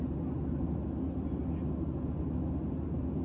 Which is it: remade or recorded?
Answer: recorded